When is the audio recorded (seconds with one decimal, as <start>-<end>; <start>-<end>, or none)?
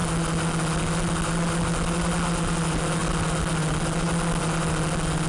0.0-5.3